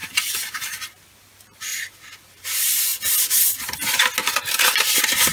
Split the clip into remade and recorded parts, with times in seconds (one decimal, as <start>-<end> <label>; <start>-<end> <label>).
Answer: 0.0-1.7 remade; 1.7-2.3 recorded; 2.3-2.9 remade; 2.9-4.6 recorded; 4.6-5.3 remade